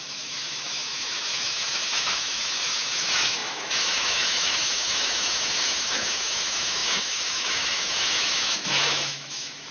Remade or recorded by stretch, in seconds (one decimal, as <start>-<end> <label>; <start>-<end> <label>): 0.0-9.7 remade